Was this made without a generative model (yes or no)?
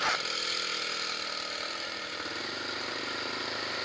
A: yes